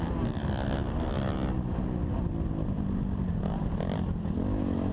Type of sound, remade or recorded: recorded